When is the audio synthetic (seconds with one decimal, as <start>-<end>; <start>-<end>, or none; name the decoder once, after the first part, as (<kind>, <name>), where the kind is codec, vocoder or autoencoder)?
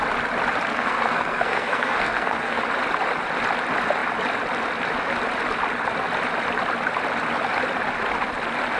0.7-2.6 (codec, SNAC)